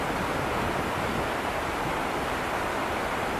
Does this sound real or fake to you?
real